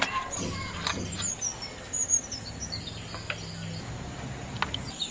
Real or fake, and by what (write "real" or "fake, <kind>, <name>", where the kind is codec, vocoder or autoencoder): real